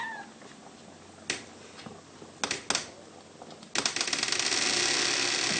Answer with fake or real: real